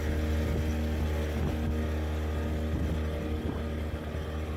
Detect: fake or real real